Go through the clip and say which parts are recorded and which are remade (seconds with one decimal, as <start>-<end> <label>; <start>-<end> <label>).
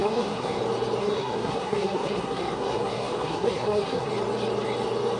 0.0-0.6 remade; 0.6-1.0 recorded; 1.0-4.1 remade; 4.1-5.2 recorded